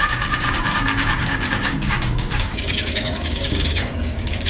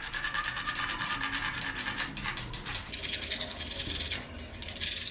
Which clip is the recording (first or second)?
second